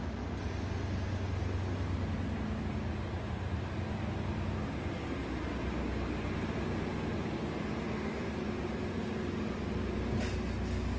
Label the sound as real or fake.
real